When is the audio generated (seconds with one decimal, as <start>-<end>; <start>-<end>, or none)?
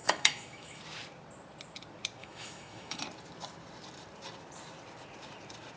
0.0-0.8; 2.2-3.0